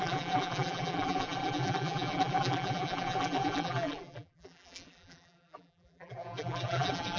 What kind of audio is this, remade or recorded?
remade